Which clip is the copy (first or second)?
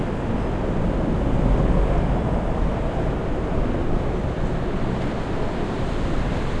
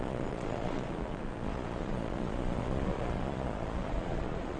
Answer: second